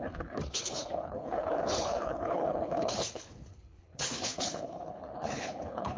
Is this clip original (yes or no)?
no